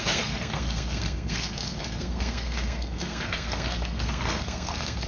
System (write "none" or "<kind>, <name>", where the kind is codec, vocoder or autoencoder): codec, SNAC